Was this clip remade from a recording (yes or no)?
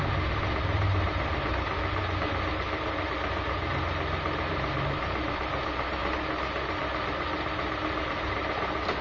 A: no